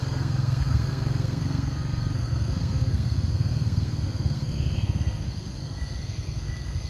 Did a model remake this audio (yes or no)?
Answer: yes